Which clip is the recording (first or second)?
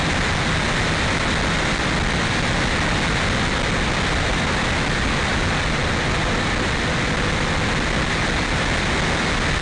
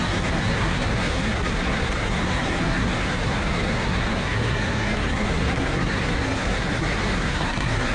first